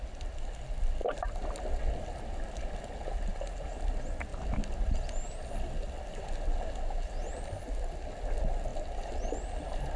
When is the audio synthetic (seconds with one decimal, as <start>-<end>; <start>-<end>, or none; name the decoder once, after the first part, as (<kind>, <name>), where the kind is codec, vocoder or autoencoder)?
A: none